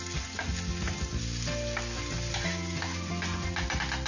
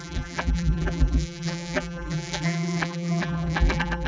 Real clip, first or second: first